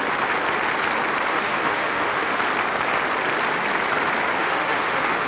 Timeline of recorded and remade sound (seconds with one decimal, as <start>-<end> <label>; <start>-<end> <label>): 0.0-1.3 recorded; 1.3-2.4 remade; 2.4-4.4 recorded; 4.4-5.3 remade